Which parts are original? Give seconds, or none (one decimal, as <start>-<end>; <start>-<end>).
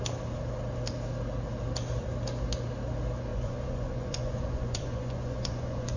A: 0.0-3.3